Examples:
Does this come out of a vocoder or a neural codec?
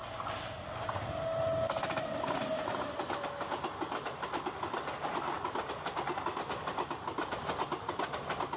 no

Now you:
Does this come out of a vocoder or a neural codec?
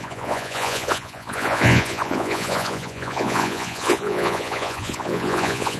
yes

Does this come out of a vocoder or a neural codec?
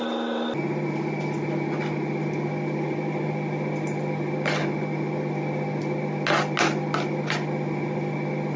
no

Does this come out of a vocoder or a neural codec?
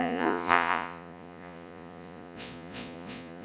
yes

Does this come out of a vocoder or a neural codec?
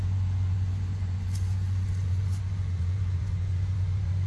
yes